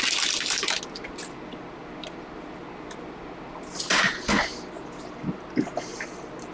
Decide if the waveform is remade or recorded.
recorded